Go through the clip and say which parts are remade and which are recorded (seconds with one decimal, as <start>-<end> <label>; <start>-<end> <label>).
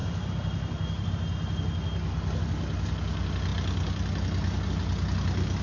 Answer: 0.0-1.1 remade; 1.1-5.6 recorded